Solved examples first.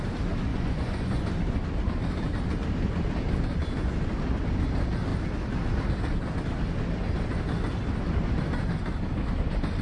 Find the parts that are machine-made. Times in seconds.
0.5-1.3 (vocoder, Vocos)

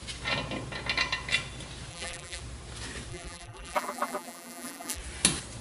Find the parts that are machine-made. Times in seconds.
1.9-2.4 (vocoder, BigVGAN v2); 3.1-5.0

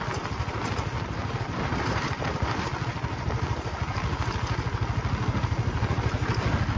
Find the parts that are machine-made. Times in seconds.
1.2-2.7 (vocoder, BigVGAN v2)

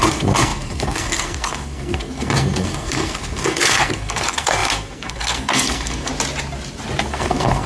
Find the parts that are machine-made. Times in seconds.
0.0-6.1 (codec, SNAC); 7.0-7.7

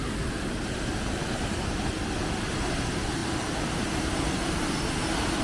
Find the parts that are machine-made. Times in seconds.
0.9-1.9 (vocoder, BigVGAN v2); 3.2-4.0

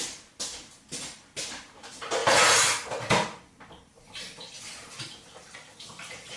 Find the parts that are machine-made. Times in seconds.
none

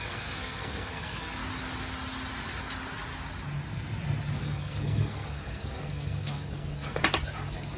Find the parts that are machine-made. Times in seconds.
0.0-1.4 (codec, SNAC); 4.4-7.0

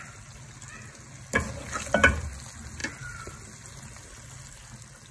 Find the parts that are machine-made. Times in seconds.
none